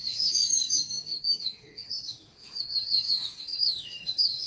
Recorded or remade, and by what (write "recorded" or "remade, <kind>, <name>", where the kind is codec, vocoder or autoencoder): remade, autoencoder, DAC-VAE